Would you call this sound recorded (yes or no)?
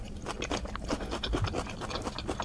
yes